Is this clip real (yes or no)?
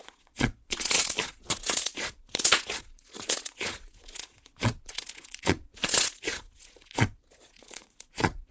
no